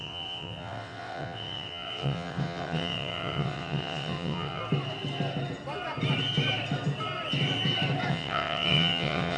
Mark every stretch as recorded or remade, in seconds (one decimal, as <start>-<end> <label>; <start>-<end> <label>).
0.0-4.6 remade; 4.6-8.1 recorded; 8.1-9.4 remade